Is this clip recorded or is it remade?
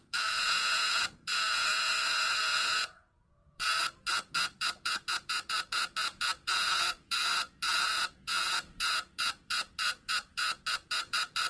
remade